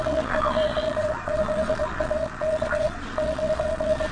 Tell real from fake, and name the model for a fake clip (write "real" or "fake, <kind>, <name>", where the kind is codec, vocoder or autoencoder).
fake, vocoder, Vocos